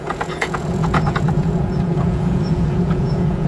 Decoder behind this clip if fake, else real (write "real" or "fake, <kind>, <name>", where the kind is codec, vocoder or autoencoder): fake, vocoder, Vocos